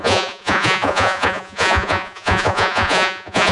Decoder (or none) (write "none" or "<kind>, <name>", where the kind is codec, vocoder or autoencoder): vocoder, Vocos